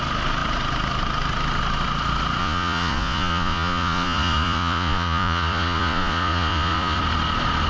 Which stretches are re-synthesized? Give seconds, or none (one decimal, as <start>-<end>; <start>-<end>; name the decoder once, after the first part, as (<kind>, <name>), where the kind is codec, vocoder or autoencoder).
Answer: 2.4-7.0 (vocoder, Vocos)